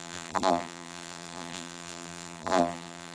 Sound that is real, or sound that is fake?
fake